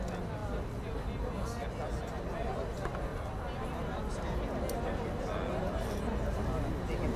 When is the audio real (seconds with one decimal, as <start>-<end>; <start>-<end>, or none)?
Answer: 0.0-7.2